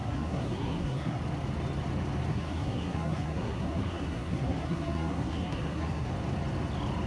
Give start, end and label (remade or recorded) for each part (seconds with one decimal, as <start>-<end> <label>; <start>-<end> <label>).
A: 0.0-1.2 remade; 1.2-2.3 recorded; 2.3-6.1 remade; 6.1-7.1 recorded